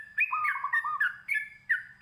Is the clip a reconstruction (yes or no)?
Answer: no